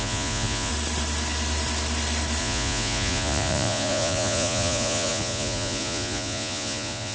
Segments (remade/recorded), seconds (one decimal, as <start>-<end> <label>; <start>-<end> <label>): 0.0-0.7 remade; 0.7-2.4 recorded; 2.4-7.1 remade